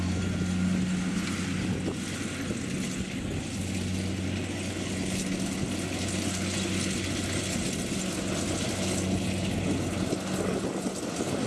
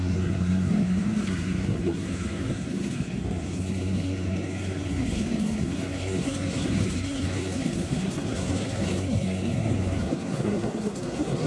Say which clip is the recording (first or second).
first